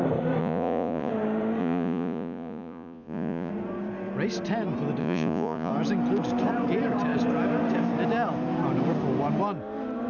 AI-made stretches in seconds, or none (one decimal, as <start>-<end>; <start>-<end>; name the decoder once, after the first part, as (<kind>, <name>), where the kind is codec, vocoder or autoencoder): 0.4-1.1 (vocoder, Vocos); 1.6-3.5; 5.0-5.7